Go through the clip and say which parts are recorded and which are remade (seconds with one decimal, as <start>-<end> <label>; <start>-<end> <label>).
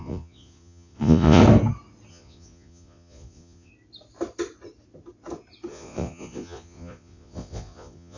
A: 0.0-1.4 remade; 1.4-2.1 recorded; 2.1-3.7 remade; 3.7-5.7 recorded; 5.7-8.2 remade